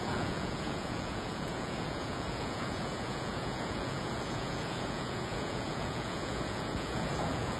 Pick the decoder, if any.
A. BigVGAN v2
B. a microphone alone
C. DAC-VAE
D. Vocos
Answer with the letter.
D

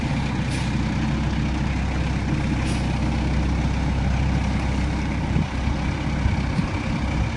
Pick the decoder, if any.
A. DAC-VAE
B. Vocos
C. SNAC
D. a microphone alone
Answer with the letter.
D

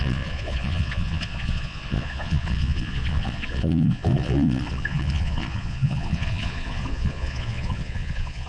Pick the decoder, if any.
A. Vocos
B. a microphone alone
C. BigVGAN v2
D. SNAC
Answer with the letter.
A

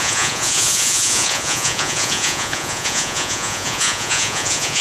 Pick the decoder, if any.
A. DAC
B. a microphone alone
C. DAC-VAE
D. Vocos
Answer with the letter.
D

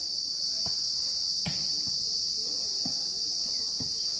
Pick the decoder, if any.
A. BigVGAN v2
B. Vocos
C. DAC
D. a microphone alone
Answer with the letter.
D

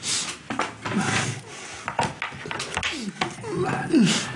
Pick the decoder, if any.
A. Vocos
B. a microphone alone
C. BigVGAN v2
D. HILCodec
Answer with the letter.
B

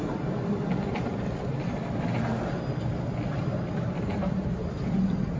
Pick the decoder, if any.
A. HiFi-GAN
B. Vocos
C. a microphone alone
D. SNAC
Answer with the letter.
C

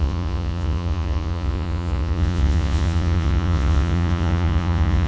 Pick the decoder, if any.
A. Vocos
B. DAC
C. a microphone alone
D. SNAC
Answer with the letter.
A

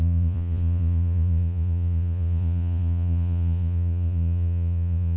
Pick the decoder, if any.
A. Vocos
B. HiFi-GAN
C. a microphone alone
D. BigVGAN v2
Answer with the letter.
A